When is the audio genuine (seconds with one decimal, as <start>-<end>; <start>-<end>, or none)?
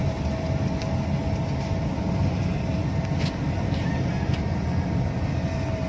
0.0-5.9